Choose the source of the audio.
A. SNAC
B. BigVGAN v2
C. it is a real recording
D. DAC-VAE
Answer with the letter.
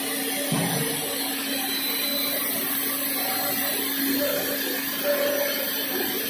C